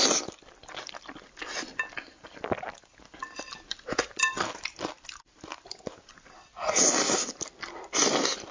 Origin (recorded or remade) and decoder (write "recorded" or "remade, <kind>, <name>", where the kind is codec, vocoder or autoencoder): recorded